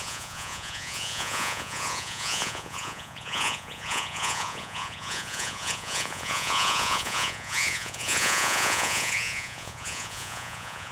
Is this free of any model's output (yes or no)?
no